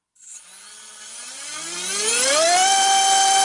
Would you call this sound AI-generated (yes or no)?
no